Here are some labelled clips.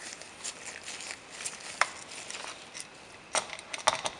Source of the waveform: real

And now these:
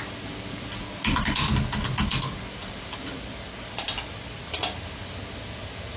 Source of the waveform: real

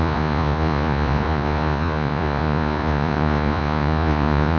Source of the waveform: fake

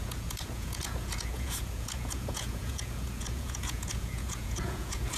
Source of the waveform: fake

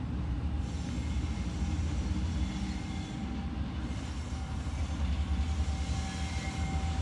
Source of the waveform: real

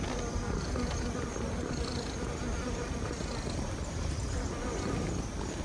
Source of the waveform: real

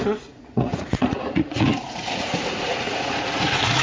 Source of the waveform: fake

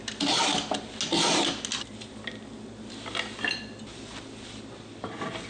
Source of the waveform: real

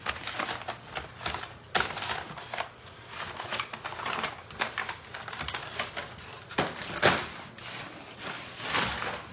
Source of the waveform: real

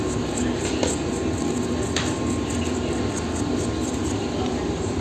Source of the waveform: real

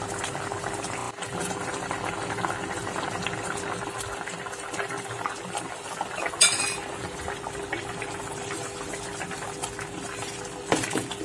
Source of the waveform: real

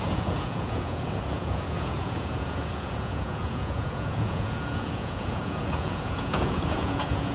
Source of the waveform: fake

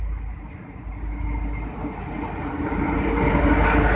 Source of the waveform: real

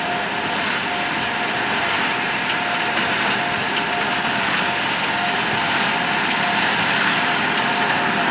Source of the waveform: real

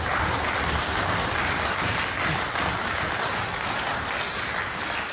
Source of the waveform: real